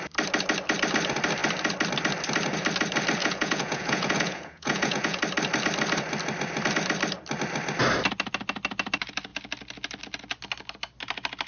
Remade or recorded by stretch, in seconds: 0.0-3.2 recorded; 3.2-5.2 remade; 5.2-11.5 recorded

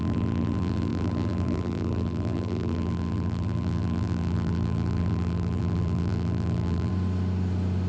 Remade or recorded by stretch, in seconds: 0.0-6.9 remade; 6.9-7.9 recorded

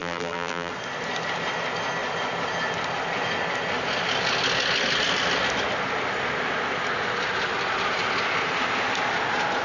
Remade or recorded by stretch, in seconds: 0.0-0.7 remade; 0.7-9.6 recorded

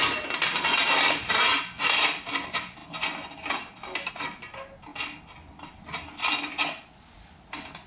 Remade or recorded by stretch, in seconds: 0.0-7.9 recorded

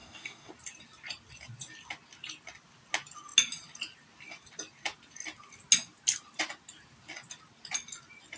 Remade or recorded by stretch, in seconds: 0.0-0.5 remade; 0.5-8.4 recorded